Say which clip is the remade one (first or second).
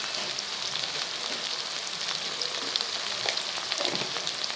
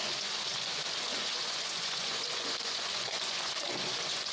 second